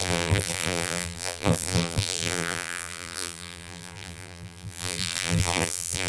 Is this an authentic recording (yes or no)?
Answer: no